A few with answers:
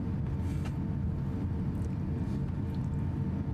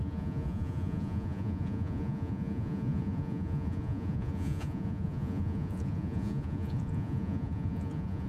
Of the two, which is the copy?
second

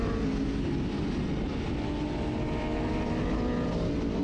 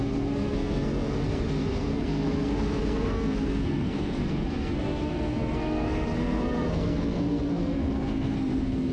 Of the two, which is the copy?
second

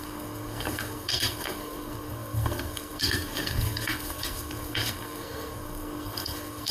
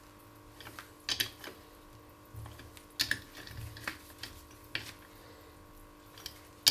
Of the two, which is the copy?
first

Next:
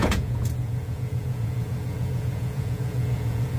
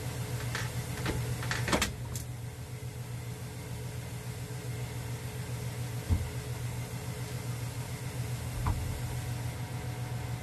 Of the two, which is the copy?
first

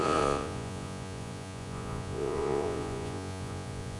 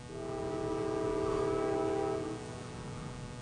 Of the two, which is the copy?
first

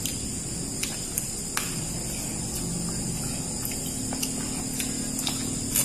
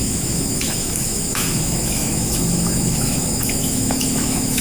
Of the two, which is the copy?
second